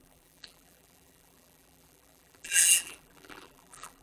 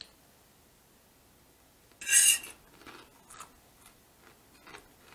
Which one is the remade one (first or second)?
first